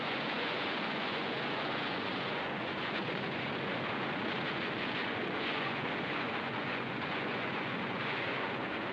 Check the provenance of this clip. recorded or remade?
remade